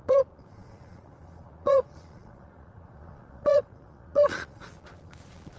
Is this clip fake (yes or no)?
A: yes